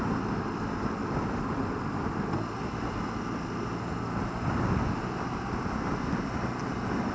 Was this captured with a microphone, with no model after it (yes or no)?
yes